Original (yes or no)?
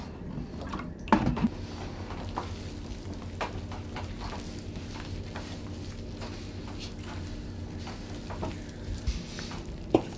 yes